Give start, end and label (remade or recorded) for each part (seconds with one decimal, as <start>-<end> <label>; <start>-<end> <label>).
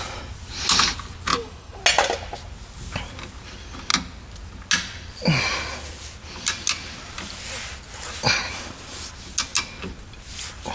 0.0-1.3 recorded; 1.3-1.8 remade; 1.8-10.7 recorded